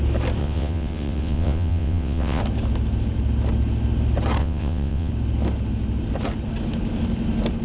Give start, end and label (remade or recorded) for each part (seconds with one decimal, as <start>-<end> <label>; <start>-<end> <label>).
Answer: 0.0-0.4 recorded; 0.4-2.4 remade; 2.4-4.4 recorded; 4.4-5.1 remade; 5.1-7.6 recorded